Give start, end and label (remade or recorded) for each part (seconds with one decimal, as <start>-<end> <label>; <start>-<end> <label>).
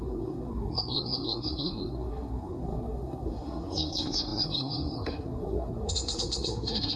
0.0-7.0 remade